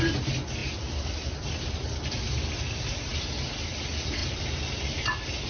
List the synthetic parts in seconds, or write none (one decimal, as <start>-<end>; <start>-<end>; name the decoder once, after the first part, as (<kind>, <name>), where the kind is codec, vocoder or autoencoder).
0.6-2.3 (vocoder, BigVGAN v2); 4.2-5.1

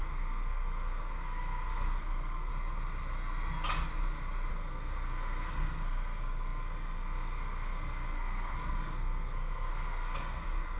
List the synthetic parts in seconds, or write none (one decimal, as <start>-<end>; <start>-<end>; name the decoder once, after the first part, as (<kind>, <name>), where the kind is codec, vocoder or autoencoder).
0.0-2.5 (codec, SNAC); 4.5-10.8